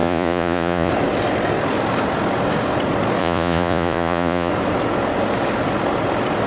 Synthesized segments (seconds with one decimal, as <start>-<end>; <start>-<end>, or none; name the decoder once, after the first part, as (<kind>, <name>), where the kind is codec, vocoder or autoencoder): 0.0-0.9 (vocoder, Vocos); 3.2-4.5